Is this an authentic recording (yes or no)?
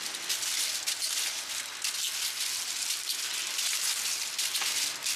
yes